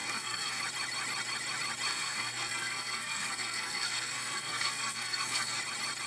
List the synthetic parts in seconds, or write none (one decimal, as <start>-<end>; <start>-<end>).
0.0-0.6; 1.9-5.6